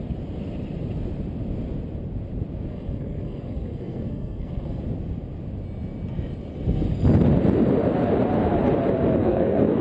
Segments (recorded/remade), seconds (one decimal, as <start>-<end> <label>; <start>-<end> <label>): 0.0-2.7 recorded; 2.7-4.8 remade; 4.8-9.2 recorded; 9.2-9.8 remade